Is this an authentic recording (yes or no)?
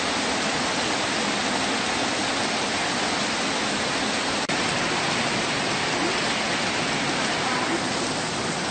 yes